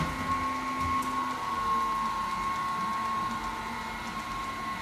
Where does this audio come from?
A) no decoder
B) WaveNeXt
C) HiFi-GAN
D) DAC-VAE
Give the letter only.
A